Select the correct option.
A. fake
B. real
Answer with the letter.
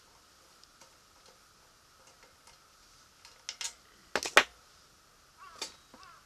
B